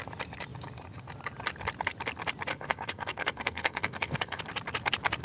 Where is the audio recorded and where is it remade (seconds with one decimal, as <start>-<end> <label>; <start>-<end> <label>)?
0.0-2.5 recorded; 2.5-4.4 remade; 4.4-5.2 recorded